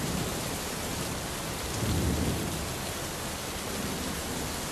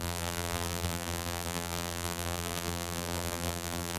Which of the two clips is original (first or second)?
first